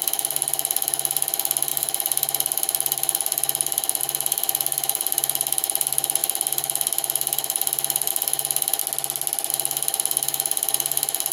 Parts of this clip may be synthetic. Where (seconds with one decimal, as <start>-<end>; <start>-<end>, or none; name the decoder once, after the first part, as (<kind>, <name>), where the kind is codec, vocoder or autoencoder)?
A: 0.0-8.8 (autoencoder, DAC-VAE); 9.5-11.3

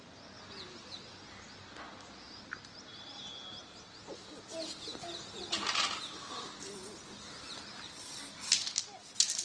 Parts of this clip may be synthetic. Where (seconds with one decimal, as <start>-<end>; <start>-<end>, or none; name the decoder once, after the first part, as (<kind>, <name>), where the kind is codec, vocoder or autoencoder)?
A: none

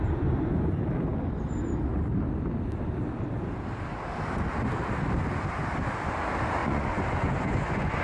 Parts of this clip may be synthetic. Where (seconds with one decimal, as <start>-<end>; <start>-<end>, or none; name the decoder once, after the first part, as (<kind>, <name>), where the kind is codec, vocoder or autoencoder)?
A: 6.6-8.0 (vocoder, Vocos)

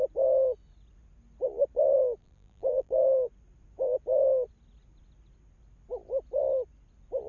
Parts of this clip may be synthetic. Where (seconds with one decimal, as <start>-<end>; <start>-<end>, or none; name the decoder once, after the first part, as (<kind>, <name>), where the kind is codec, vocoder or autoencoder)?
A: 2.2-3.0 (vocoder, BigVGAN v2)